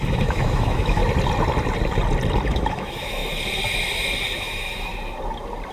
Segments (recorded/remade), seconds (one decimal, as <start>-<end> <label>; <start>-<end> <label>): 0.0-1.0 remade; 1.0-2.5 recorded; 2.5-3.2 remade; 3.2-4.4 recorded; 4.4-4.9 remade; 4.9-5.7 recorded